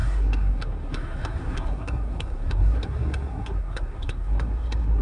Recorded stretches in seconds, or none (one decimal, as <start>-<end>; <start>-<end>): none